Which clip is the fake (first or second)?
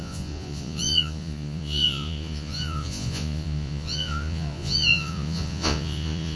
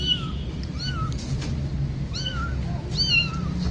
first